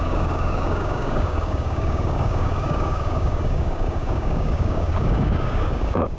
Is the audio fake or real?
fake